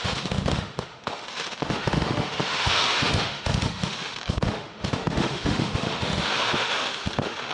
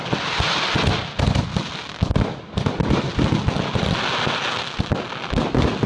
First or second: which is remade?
first